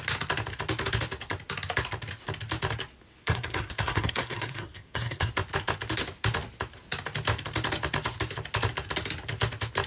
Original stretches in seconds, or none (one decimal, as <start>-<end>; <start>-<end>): 0.0-3.2; 5.3-9.9